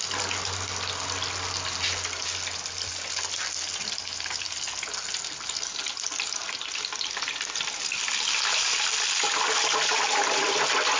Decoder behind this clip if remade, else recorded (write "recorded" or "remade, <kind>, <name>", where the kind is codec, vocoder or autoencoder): recorded